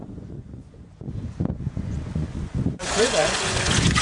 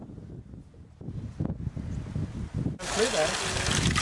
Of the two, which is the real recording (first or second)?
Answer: second